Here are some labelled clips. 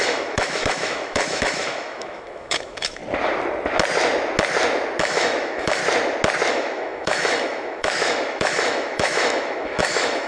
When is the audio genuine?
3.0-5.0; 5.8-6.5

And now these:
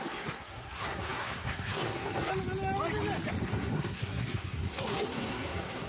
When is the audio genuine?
2.3-3.4

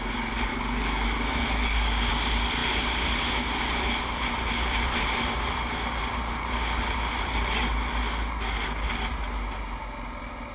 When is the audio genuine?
0.0-0.5; 2.1-10.5

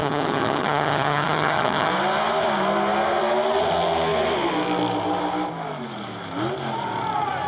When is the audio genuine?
1.9-7.5

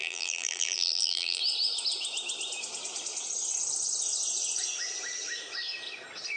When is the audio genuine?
1.4-6.4

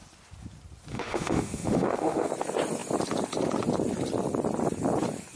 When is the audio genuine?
0.0-0.9; 2.3-5.4

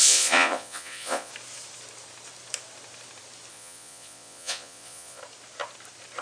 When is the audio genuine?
1.3-3.5; 5.2-6.2